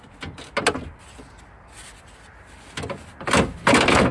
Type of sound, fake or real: real